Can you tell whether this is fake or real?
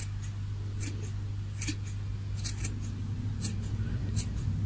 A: real